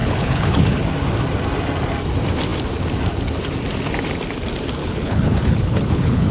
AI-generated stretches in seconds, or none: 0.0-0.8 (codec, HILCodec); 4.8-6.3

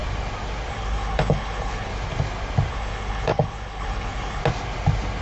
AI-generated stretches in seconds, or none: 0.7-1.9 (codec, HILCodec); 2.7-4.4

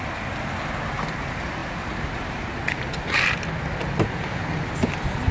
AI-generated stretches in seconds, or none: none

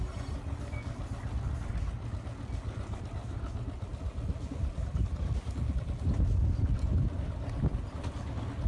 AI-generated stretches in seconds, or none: none

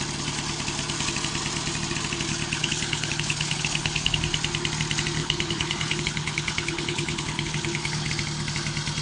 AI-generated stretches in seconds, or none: 2.6-4.2 (codec, HILCodec); 5.2-8.1

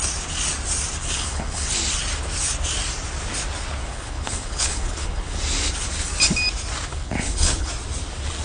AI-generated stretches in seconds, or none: 1.0-1.7 (codec, HILCodec); 3.8-5.4; 6.9-7.7

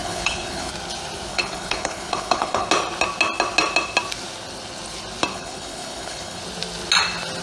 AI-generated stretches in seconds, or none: 0.0-0.7 (codec, HILCodec); 1.3-2.7; 5.3-6.4

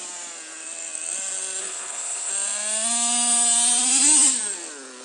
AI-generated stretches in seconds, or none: 1.6-2.3 (codec, HILCodec)